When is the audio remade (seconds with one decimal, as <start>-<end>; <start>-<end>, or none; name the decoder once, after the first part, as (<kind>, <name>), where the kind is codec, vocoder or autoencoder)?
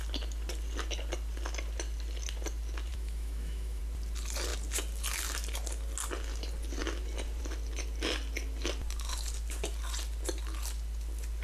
2.9-3.8 (autoencoder, DAC-VAE)